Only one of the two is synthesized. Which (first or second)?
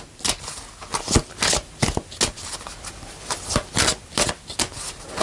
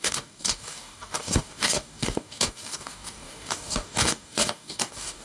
second